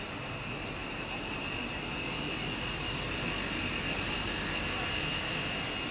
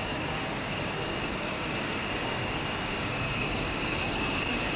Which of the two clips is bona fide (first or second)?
first